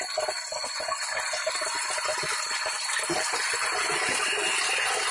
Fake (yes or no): no